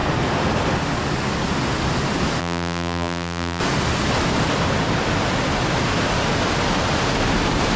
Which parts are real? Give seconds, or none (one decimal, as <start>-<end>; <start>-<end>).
0.0-2.4; 3.6-7.8